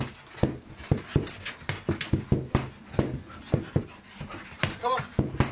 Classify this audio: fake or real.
real